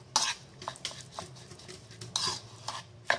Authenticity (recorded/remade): recorded